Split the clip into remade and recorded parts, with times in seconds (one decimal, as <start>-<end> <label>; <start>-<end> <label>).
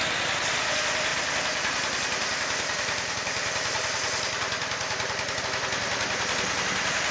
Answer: 0.0-1.1 recorded; 1.1-5.4 remade; 5.4-7.1 recorded